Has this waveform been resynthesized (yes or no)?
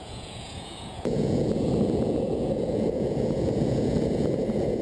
yes